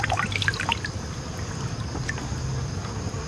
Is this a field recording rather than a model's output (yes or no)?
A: yes